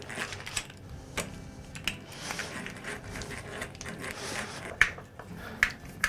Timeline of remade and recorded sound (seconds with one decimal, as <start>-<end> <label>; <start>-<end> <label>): 0.0-2.4 recorded; 2.4-5.4 remade; 5.4-6.1 recorded